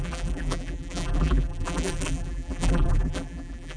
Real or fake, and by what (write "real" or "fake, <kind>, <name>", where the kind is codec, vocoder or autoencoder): fake, vocoder, BigVGAN v2